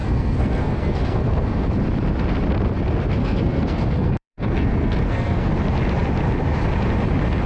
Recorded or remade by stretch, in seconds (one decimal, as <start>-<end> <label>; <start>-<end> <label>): 0.0-1.7 remade; 1.7-3.2 recorded; 3.2-5.5 remade; 5.5-7.5 recorded